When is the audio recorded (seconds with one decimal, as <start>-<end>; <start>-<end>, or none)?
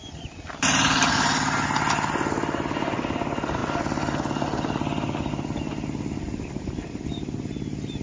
0.0-8.0